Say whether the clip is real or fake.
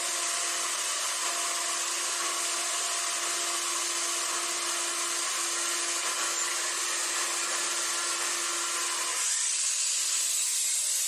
real